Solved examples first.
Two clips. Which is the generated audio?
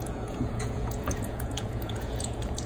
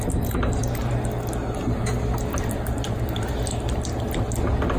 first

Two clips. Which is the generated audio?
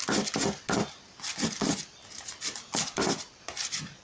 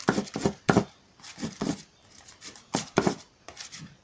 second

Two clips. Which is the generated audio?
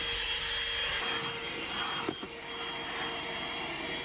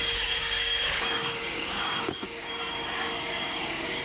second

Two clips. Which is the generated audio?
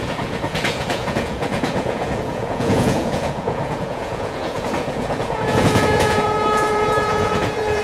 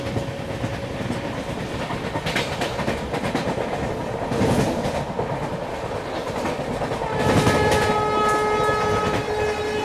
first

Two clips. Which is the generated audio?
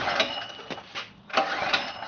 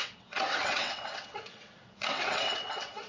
second